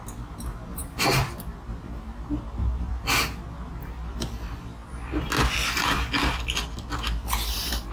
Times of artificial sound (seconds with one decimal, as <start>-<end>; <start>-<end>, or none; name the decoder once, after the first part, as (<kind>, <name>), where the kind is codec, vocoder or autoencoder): none